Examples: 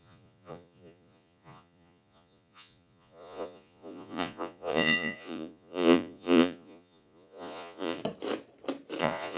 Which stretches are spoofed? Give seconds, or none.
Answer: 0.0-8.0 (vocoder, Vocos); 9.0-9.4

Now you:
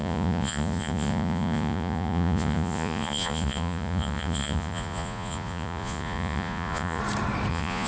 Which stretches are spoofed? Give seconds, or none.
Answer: 0.0-7.0 (vocoder, Vocos); 7.5-7.9

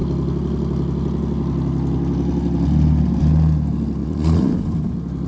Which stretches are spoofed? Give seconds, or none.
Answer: 4.0-4.5 (vocoder, Vocos)

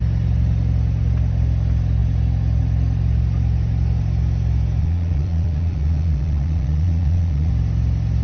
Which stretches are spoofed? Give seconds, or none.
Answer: 4.8-7.5 (vocoder, Vocos)